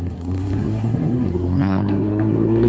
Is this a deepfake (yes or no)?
yes